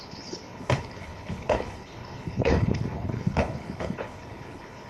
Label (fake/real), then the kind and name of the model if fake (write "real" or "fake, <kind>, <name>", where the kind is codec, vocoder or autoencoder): fake, codec, HILCodec